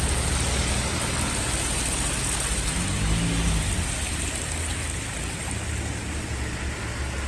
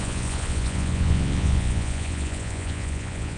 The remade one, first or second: second